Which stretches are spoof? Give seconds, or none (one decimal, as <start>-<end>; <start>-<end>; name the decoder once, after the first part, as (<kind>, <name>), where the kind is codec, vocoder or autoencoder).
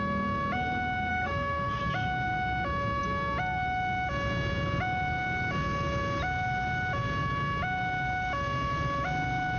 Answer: 1.1-1.8 (codec, SNAC)